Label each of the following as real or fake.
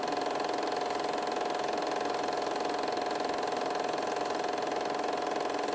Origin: real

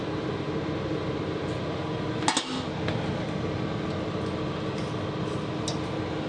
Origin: real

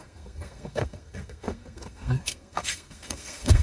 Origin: fake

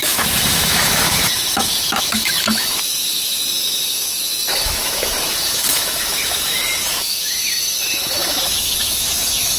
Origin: fake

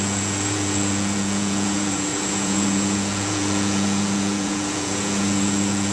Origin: fake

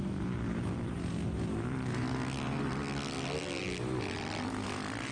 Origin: real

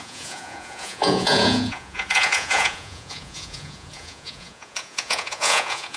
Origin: fake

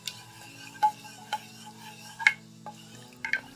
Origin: real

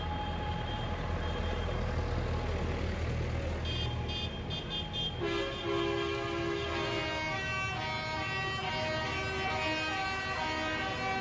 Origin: real